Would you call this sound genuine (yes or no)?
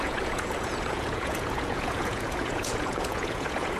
no